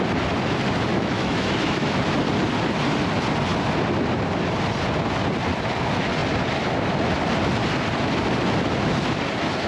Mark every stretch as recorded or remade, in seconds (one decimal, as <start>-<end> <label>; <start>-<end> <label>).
0.0-0.9 recorded; 0.9-2.0 remade; 2.0-9.7 recorded